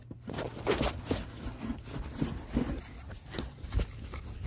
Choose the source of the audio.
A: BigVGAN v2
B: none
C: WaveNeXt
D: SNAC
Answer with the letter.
B